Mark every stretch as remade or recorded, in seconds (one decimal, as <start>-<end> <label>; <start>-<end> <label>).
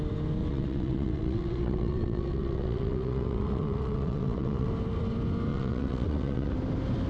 0.0-0.4 recorded; 0.4-4.7 remade; 4.7-5.5 recorded; 5.5-6.5 remade; 6.5-7.1 recorded